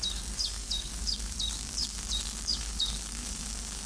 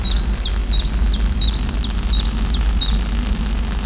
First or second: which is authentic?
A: second